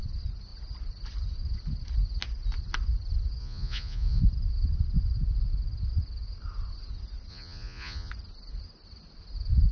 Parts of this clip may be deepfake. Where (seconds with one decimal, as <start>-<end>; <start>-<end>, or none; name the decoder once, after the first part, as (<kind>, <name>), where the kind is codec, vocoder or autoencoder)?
3.4-4.2 (vocoder, Vocos); 7.3-8.1